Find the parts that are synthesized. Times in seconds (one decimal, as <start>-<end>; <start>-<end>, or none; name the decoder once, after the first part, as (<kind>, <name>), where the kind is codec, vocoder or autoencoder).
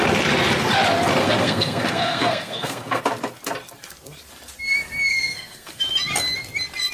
1.2-3.0 (codec, SNAC); 5.1-5.8